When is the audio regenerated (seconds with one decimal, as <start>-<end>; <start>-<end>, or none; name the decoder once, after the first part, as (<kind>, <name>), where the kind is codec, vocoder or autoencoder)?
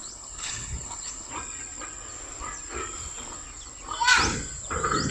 0.0-1.3 (codec, HILCodec)